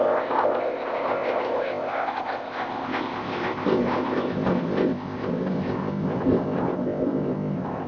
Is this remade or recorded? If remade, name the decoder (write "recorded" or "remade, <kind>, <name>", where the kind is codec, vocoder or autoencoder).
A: remade, codec, ZipCodec